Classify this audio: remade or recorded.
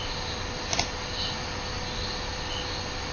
recorded